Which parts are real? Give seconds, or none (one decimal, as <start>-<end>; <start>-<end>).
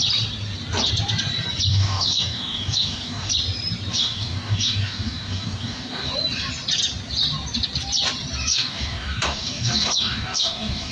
0.0-1.7; 3.3-3.9; 6.1-8.5